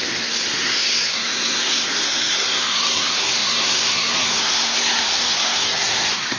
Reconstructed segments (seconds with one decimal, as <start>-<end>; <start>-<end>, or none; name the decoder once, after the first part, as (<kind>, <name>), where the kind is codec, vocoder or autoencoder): 0.0-6.4 (codec, SNAC)